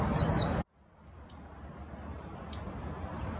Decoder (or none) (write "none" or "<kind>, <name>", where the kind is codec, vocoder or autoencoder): none